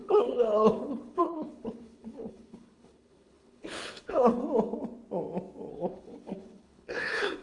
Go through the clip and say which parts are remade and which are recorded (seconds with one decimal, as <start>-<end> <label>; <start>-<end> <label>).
0.0-4.4 remade; 4.4-5.7 recorded; 5.7-7.4 remade